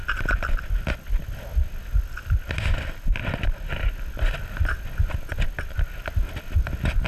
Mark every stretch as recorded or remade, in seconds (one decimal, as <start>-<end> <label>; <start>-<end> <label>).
0.0-7.1 recorded